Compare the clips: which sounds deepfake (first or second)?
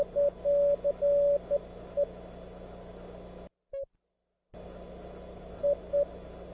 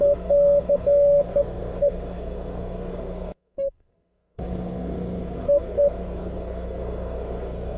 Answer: second